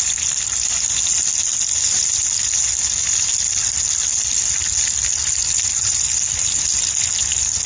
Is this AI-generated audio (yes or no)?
no